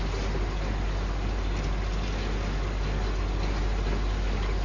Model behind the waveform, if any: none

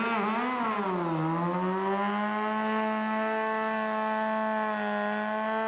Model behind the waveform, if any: none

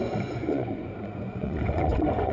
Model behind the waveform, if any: vocoder, Vocos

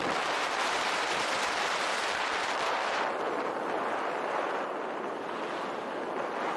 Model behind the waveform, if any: none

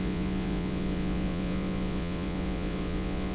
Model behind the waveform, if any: vocoder, Vocos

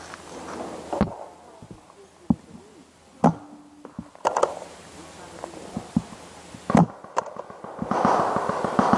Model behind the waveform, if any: none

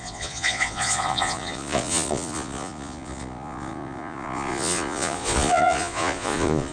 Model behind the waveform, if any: vocoder, Vocos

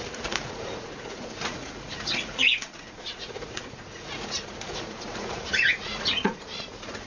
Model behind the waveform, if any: vocoder, Vocos